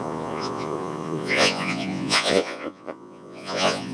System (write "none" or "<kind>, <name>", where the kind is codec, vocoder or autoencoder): vocoder, Vocos